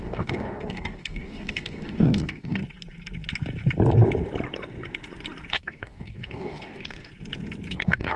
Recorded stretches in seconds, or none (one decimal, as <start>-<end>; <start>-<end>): 2.6-5.5; 7.1-7.7